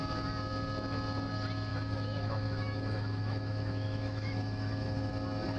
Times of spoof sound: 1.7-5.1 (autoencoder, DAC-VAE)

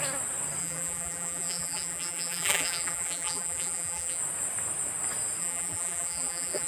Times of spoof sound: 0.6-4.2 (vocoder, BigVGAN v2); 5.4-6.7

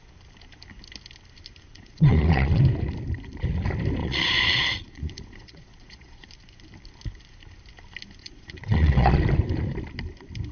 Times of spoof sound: 1.7-2.6 (vocoder, Vocos); 4.0-6.3; 8.2-9.2

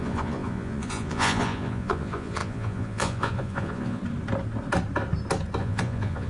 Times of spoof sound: 0.0-4.0 (vocoder, Vocos); 5.6-6.3

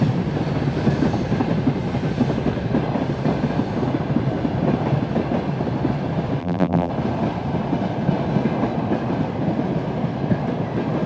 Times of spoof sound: 6.4-6.9 (vocoder, BigVGAN v2)

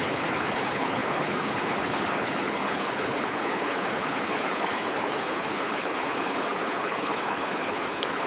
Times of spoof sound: 0.0-8.3 (codec, HILCodec)